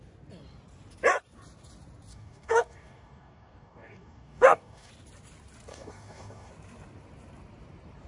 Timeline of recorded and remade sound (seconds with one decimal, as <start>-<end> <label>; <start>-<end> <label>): 0.0-2.1 recorded; 2.1-4.9 remade; 4.9-5.7 recorded; 5.7-6.5 remade; 6.5-8.1 recorded